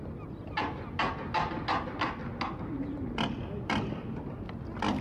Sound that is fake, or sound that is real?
real